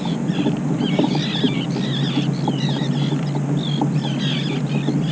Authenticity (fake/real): real